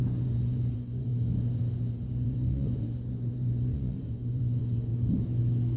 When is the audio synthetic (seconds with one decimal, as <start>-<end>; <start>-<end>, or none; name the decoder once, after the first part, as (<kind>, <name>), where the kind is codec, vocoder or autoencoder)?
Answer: 0.0-1.1 (vocoder, Vocos); 1.9-4.9